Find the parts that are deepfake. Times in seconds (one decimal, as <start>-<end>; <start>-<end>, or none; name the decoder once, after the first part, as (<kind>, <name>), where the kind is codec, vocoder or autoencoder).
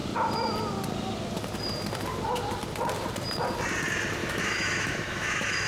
4.2-5.7 (autoencoder, DAC-VAE)